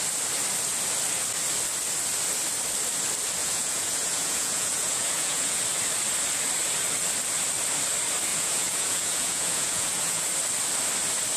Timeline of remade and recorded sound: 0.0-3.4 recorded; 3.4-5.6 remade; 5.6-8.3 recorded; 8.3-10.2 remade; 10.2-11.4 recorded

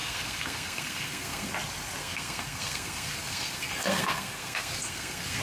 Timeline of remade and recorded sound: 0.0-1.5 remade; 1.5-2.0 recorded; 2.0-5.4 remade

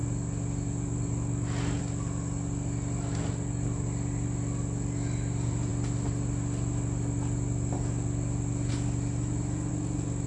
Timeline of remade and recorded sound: 0.0-10.3 recorded

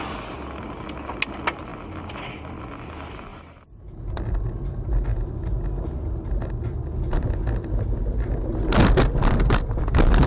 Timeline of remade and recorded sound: 0.0-3.3 recorded; 3.3-4.2 remade; 4.2-10.3 recorded